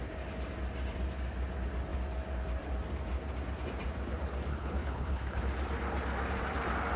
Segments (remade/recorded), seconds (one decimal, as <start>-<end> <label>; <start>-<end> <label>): 0.0-4.5 recorded; 4.5-5.4 remade; 5.4-7.0 recorded